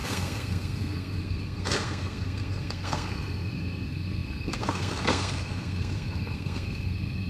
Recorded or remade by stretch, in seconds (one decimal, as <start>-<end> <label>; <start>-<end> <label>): 0.0-7.3 remade